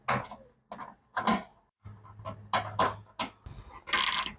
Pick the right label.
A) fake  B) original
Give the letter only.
B